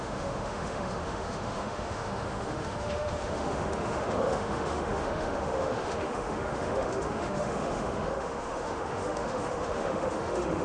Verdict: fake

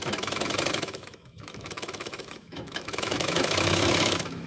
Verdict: fake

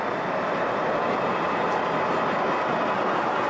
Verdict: real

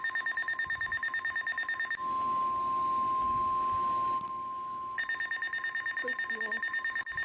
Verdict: real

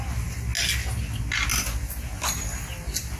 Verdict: real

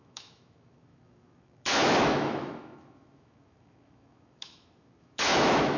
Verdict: fake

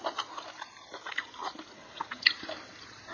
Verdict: real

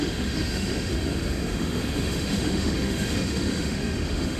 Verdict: fake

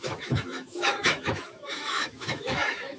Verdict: fake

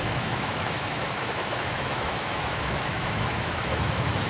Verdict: fake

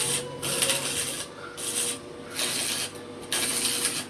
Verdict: real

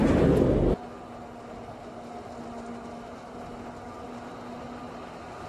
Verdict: real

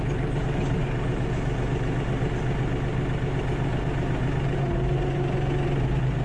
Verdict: real